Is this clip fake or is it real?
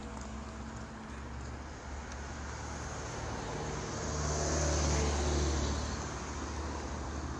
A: real